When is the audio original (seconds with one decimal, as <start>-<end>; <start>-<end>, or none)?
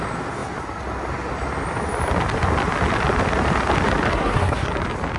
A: 0.0-4.1; 4.7-5.2